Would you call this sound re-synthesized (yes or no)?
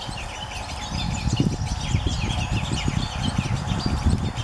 no